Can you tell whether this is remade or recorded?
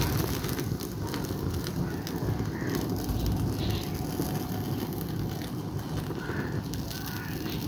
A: recorded